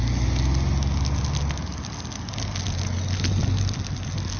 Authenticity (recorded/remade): recorded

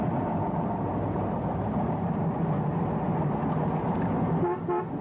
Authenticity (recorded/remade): recorded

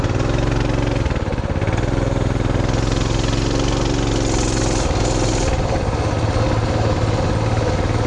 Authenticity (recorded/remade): recorded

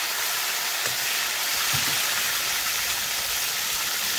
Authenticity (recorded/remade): recorded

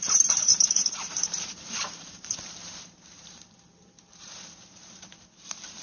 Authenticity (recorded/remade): remade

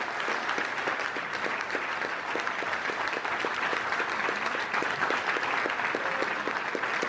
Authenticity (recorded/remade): remade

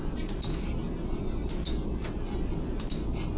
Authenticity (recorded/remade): recorded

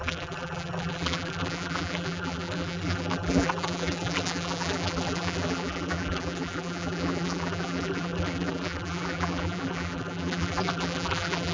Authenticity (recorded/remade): remade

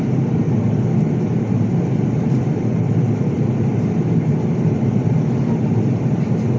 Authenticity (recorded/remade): recorded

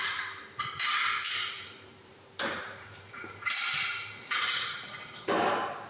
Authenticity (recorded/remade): remade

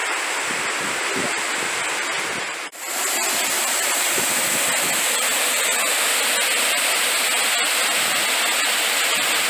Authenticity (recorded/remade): recorded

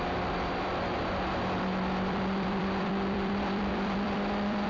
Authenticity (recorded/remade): remade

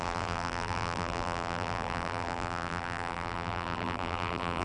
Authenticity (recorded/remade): remade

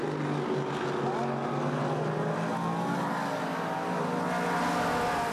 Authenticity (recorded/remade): recorded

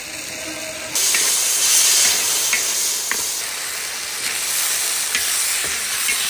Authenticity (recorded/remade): recorded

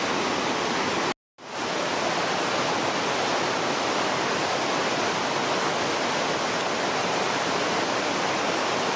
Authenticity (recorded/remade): recorded